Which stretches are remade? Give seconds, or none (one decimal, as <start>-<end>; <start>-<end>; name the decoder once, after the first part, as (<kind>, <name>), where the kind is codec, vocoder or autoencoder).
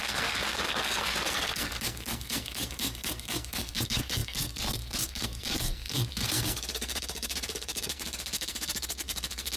0.0-9.6 (codec, SNAC)